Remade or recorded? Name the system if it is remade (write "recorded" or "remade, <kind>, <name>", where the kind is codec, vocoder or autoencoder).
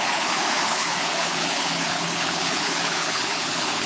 remade, codec, HILCodec